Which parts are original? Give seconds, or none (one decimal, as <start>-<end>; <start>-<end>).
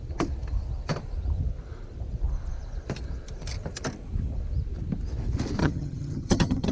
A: 0.0-5.6